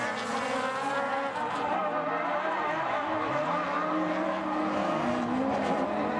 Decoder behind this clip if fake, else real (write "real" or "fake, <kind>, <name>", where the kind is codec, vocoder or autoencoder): real